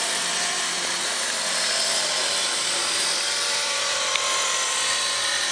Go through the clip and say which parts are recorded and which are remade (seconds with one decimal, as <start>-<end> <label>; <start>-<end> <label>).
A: 0.0-5.5 remade